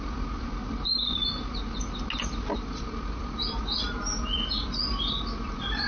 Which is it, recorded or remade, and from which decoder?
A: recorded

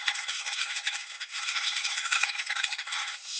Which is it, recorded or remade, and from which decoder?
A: remade, codec, SNAC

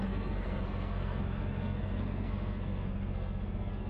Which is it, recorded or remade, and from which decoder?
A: remade, codec, SNAC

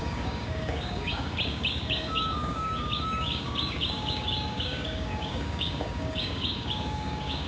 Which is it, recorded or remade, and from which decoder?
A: remade, codec, DAC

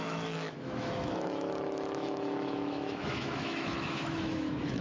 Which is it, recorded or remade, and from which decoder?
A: remade, autoencoder, DAC-VAE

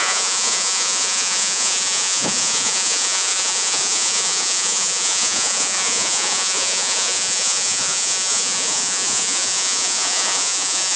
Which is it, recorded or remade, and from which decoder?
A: remade, vocoder, Vocos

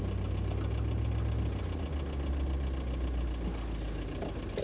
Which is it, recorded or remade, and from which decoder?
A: recorded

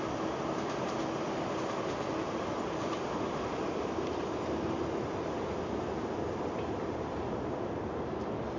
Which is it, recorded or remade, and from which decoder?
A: recorded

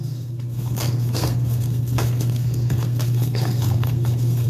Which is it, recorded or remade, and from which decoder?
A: remade, codec, SNAC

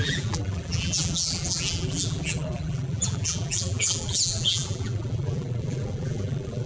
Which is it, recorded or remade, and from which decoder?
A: remade, vocoder, BigVGAN v2